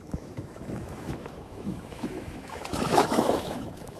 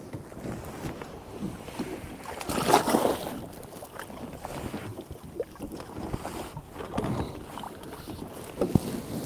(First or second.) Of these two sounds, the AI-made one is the first